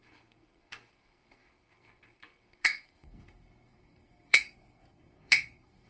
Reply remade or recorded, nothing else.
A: remade